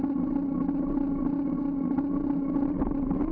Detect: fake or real real